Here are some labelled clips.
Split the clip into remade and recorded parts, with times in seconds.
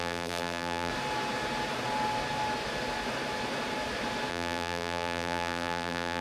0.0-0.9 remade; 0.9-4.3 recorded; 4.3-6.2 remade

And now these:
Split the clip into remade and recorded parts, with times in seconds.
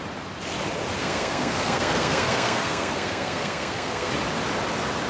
0.0-1.0 recorded; 1.0-4.1 remade; 4.1-5.1 recorded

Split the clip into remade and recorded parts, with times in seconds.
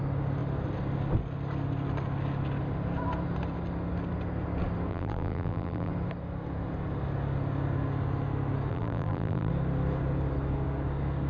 0.0-4.9 recorded; 4.9-5.9 remade; 5.9-8.7 recorded; 8.7-9.5 remade; 9.5-11.3 recorded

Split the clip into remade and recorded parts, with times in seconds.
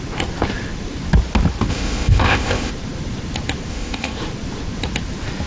0.0-1.7 recorded; 1.7-2.7 remade; 2.7-3.7 recorded; 3.7-4.2 remade; 4.2-5.5 recorded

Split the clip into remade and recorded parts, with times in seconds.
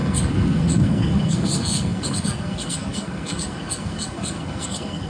0.0-5.1 remade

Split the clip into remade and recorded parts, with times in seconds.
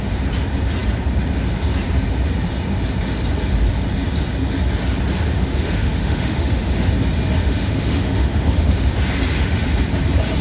0.0-5.3 recorded; 5.3-6.9 remade; 6.9-7.4 recorded; 7.4-8.9 remade; 8.9-9.3 recorded; 9.3-9.8 remade; 9.8-10.4 recorded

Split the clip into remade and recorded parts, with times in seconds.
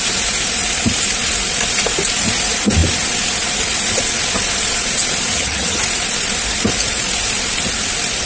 0.0-5.3 recorded; 5.3-5.8 remade; 5.8-8.3 recorded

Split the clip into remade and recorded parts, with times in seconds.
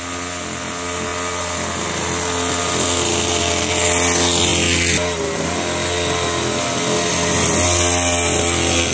0.0-8.9 recorded